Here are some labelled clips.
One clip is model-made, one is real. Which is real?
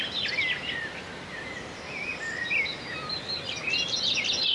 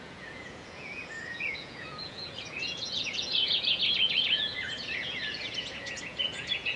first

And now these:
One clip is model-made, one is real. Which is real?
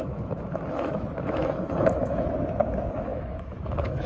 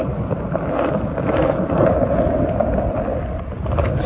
second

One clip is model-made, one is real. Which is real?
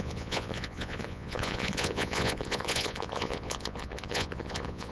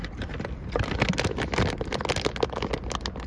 second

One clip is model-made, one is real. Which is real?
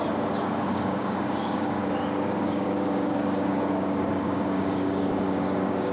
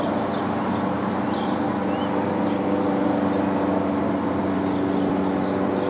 second